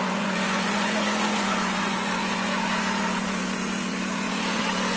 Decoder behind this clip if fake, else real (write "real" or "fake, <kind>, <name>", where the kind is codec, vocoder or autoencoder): fake, vocoder, Vocos